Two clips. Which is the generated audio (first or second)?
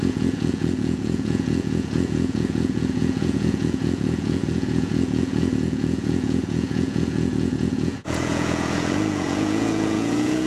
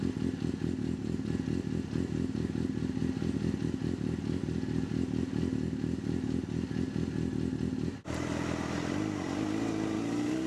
first